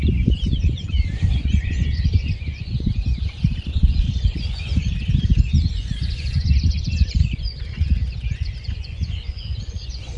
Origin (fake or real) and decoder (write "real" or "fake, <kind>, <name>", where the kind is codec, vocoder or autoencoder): fake, vocoder, Vocos